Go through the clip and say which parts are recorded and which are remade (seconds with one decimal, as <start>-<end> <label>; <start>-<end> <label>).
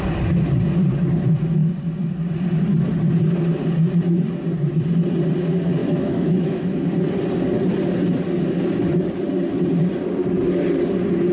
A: 0.0-5.8 recorded; 5.8-6.7 remade; 6.7-11.3 recorded